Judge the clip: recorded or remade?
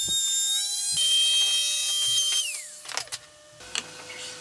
recorded